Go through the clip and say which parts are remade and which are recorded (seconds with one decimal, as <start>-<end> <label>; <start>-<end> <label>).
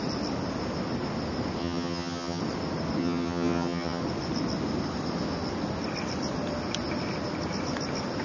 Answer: 0.0-1.6 recorded; 1.6-2.4 remade; 2.4-3.0 recorded; 3.0-4.0 remade; 4.0-8.2 recorded